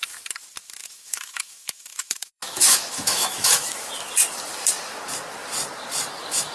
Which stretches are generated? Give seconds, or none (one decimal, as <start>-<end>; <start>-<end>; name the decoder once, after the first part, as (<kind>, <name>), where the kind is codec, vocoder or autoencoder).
0.8-3.9 (autoencoder, DAC-VAE)